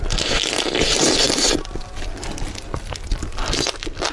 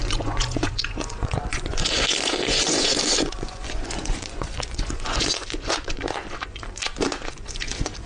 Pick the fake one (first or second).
second